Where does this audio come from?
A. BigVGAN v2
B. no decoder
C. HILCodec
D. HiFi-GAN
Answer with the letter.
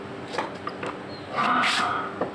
B